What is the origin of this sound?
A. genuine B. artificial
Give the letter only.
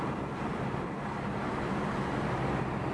A